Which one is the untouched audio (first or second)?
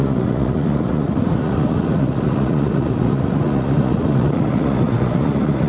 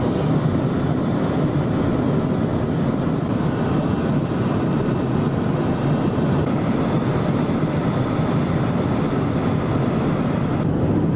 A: second